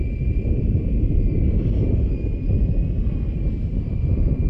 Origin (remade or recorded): remade